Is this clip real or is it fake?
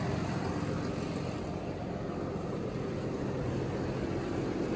real